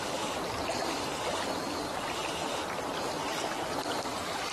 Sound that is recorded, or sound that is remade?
recorded